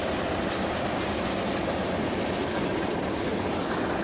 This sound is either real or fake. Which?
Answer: real